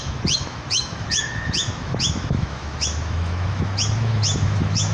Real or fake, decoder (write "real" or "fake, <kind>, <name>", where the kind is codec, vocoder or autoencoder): fake, autoencoder, DAC-VAE